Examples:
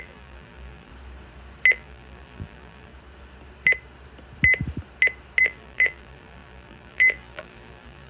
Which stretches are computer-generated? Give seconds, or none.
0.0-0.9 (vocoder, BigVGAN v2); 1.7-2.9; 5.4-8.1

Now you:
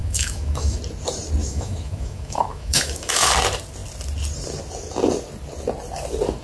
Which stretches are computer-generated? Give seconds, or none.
0.0-0.8 (autoencoder, DAC-VAE); 1.4-3.3

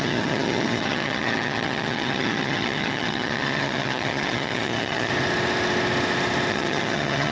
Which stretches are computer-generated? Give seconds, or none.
0.0-5.1 (vocoder, HiFi-GAN); 6.5-7.3

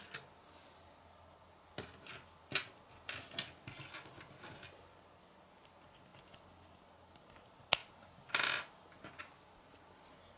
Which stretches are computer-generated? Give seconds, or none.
none

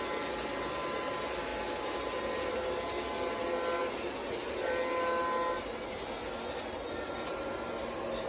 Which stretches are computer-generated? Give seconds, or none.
none

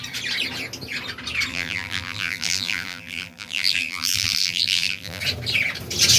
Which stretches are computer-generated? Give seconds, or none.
1.5-5.2 (vocoder, BigVGAN v2)

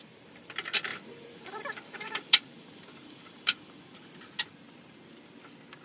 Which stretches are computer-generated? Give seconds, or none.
0.9-4.4 (vocoder, BigVGAN v2)